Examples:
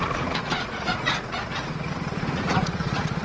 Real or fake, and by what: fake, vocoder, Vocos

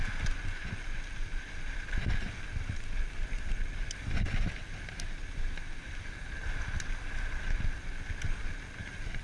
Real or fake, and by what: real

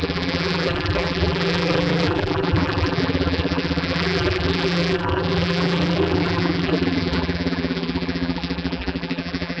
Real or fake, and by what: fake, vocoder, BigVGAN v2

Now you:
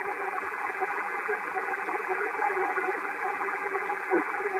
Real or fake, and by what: fake, vocoder, BigVGAN v2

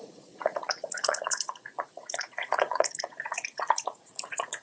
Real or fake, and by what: fake, vocoder, Vocos